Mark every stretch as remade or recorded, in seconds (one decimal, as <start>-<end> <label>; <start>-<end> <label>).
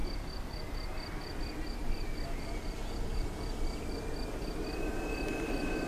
0.0-1.8 remade; 1.8-4.6 recorded; 4.6-5.9 remade